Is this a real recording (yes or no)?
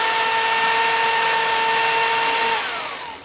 yes